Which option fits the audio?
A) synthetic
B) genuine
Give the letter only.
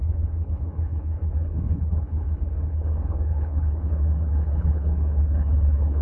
A